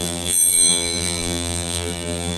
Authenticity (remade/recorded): remade